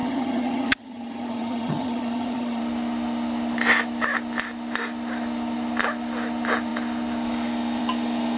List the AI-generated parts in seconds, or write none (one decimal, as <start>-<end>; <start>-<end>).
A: 0.0-2.6

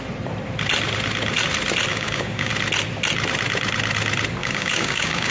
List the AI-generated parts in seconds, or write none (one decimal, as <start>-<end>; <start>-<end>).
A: 1.9-2.5; 4.4-5.3

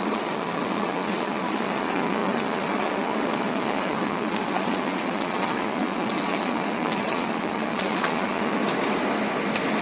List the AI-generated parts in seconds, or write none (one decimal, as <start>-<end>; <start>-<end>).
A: 0.0-8.6